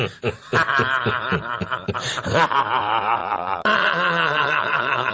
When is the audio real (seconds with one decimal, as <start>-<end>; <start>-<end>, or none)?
0.0-3.2